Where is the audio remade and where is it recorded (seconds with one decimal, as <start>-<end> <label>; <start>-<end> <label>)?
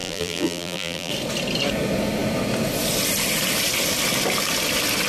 0.0-1.1 remade; 1.1-5.1 recorded